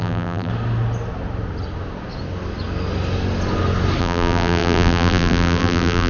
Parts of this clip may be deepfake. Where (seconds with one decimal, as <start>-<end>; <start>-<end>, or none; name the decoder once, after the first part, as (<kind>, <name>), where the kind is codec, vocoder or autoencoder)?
0.0-0.5 (vocoder, BigVGAN v2); 4.0-6.1

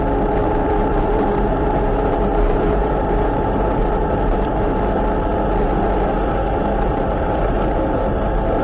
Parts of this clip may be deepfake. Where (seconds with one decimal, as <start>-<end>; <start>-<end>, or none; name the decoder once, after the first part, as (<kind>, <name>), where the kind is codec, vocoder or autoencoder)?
0.9-3.8 (vocoder, BigVGAN v2)

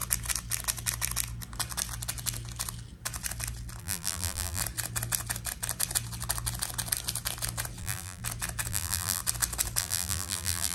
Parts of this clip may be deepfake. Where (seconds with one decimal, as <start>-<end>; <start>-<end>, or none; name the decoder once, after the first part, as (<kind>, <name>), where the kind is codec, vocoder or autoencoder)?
3.8-4.6 (vocoder, BigVGAN v2); 7.8-8.2; 8.7-9.2; 9.8-10.7

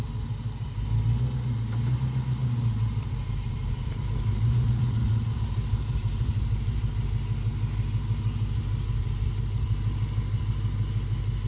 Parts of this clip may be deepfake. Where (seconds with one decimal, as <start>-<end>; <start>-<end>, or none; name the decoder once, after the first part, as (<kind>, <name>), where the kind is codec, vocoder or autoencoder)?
2.4-6.9 (vocoder, BigVGAN v2)

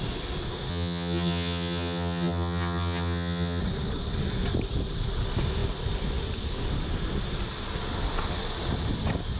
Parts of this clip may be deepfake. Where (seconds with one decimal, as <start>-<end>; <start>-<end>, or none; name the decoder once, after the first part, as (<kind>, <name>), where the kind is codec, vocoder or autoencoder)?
0.7-3.6 (vocoder, HiFi-GAN)

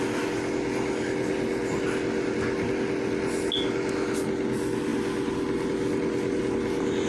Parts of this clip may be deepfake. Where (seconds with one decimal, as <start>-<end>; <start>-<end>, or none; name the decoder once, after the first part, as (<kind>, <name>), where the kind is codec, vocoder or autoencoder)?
none

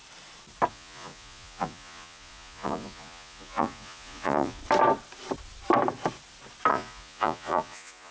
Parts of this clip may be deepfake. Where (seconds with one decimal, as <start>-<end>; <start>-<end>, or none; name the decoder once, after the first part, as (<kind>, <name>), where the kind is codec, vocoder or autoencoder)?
0.7-4.6 (vocoder, Vocos); 6.7-8.1

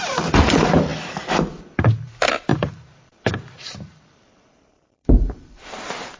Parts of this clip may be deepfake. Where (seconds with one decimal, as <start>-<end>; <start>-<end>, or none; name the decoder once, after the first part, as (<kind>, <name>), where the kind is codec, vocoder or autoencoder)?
2.5-6.2 (vocoder, BigVGAN v2)